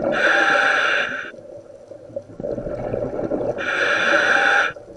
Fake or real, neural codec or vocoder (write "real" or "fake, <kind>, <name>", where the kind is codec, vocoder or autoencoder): real